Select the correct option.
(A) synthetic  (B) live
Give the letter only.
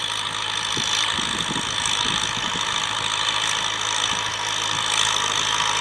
B